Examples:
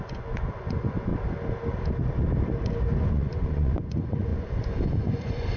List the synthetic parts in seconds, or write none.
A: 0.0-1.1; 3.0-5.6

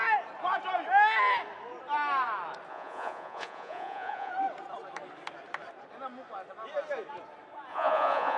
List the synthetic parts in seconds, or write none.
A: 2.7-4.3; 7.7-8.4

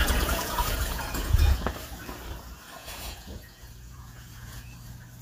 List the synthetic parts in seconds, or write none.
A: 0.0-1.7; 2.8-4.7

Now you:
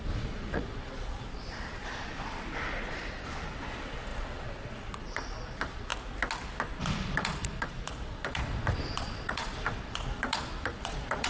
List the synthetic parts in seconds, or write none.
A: 0.0-5.9; 6.8-11.3

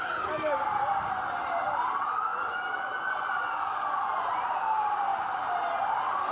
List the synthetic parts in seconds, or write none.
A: 2.3-4.6